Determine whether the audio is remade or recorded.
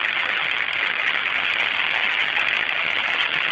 remade